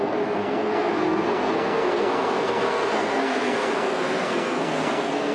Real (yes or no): no